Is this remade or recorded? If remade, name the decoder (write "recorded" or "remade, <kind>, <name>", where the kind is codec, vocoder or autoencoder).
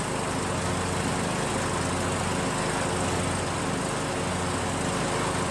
recorded